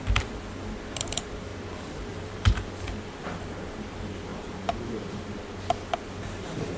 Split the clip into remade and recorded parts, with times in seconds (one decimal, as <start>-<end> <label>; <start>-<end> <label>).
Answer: 0.0-1.5 recorded; 1.5-2.7 remade; 2.7-4.3 recorded; 4.3-5.2 remade; 5.2-6.8 recorded